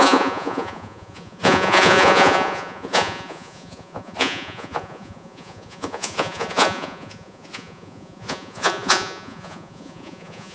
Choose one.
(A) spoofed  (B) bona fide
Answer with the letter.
A